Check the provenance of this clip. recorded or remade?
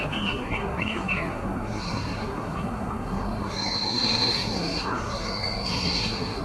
remade